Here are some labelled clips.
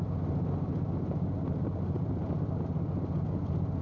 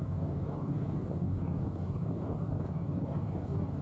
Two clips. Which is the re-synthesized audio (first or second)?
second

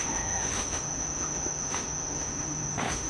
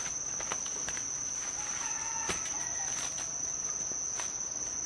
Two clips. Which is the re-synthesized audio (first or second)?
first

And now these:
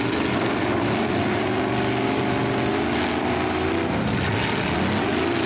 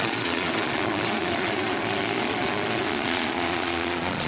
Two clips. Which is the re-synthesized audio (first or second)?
second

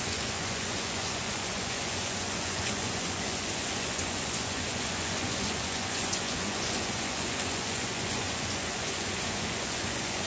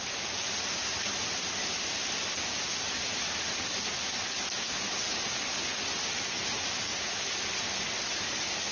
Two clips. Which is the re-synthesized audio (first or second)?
first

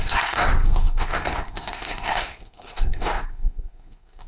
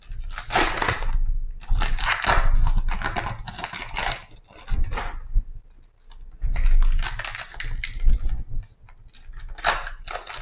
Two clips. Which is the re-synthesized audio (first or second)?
first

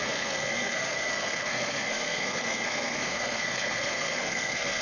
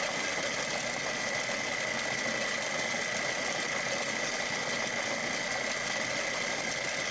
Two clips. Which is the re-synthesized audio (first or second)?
first